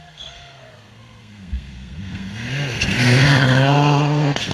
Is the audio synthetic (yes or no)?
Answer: yes